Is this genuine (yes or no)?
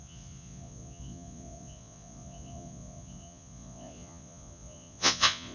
no